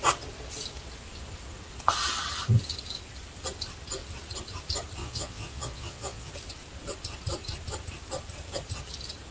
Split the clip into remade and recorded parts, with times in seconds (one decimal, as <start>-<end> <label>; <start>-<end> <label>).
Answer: 0.0-5.0 recorded; 5.0-6.3 remade; 6.3-9.3 recorded